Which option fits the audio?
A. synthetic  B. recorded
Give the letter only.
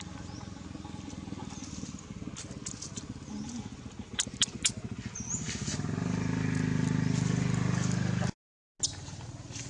B